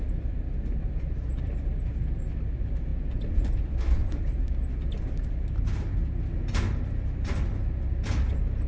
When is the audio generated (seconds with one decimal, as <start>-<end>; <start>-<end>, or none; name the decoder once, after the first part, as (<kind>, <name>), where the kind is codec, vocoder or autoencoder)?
none